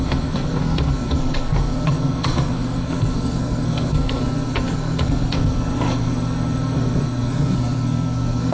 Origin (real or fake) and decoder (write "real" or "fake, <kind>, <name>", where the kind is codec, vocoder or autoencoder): fake, codec, SNAC